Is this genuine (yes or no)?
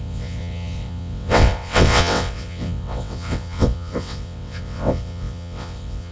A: no